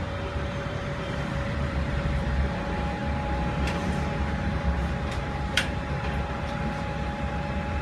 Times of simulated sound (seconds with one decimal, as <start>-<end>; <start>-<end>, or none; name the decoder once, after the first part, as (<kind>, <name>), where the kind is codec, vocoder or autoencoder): 0.0-7.8 (vocoder, BigVGAN v2)